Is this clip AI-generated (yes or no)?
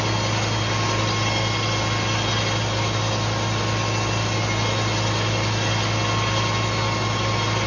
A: no